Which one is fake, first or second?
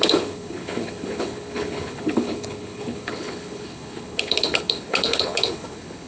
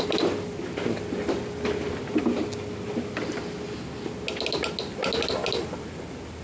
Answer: first